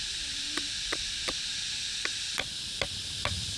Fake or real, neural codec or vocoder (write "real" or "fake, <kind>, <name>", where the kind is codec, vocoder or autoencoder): fake, vocoder, BigVGAN v2